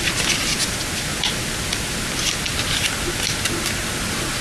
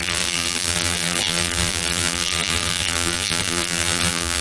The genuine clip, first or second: first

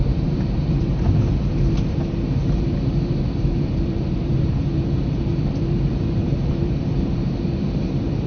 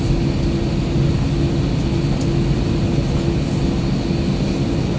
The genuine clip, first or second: second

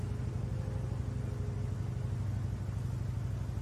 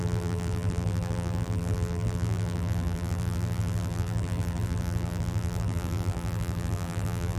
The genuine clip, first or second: first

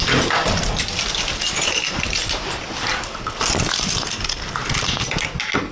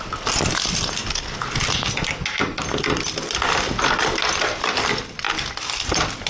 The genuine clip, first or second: second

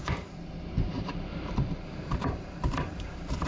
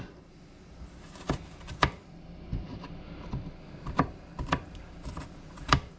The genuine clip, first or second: second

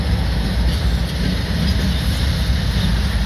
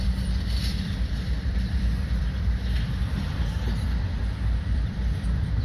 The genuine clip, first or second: first